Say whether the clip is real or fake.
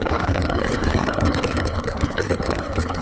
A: fake